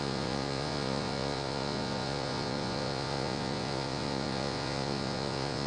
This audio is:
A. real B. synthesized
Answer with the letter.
B